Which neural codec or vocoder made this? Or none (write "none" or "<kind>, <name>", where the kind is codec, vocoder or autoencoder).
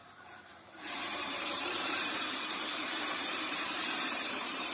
vocoder, BigVGAN v2